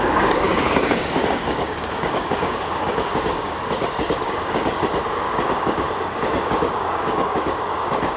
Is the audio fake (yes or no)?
yes